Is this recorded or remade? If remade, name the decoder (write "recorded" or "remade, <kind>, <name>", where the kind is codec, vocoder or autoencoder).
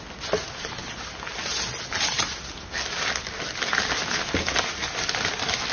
recorded